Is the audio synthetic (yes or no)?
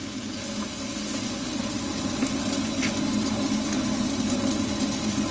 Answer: no